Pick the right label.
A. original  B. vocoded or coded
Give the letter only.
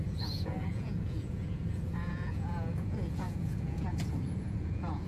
B